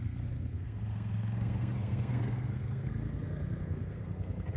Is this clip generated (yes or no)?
yes